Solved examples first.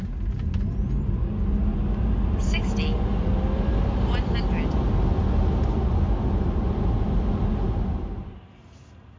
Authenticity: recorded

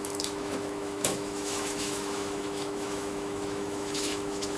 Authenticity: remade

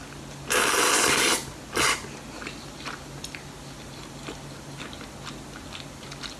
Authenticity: recorded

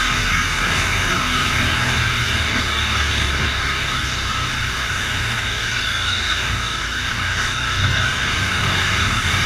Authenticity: remade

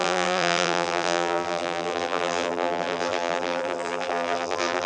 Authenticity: remade